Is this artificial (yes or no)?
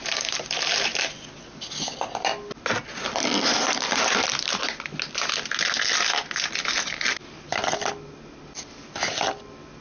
no